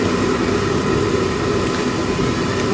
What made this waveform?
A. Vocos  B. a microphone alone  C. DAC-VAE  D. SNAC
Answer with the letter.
B